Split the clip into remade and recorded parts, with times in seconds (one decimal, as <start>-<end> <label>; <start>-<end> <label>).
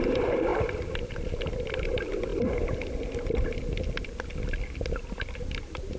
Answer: 0.0-6.0 recorded